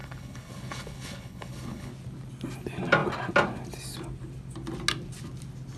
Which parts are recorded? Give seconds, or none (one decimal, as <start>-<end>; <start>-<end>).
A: 1.9-5.8